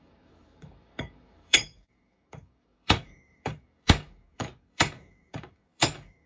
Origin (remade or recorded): remade